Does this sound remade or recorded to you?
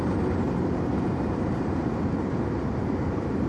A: remade